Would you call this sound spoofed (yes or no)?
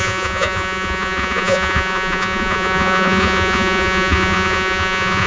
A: yes